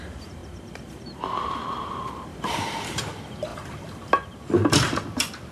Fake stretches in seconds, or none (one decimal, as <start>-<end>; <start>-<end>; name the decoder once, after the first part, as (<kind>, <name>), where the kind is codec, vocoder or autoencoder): 2.3-3.0 (vocoder, BigVGAN v2)